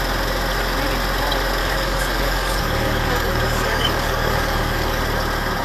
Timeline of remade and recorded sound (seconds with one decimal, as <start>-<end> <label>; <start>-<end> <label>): 0.0-1.6 recorded; 1.6-5.0 remade; 5.0-5.6 recorded